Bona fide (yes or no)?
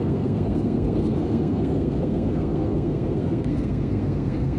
no